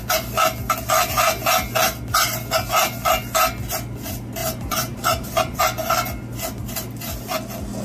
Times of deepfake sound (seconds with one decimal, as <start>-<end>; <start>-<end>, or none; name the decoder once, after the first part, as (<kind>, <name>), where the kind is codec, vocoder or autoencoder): 4.4-5.6 (vocoder, BigVGAN v2)